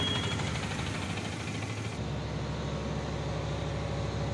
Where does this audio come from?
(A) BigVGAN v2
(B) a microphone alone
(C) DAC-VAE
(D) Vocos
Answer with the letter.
B